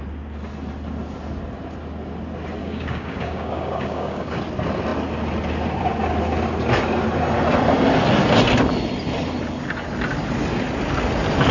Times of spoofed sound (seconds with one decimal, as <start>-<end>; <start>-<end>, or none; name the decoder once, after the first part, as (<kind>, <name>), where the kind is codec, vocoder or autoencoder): 2.6-4.4 (codec, DAC)